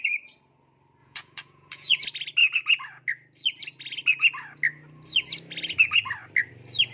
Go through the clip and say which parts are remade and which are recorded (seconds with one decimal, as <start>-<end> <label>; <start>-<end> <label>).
0.0-1.0 recorded; 1.0-2.0 remade; 2.0-6.9 recorded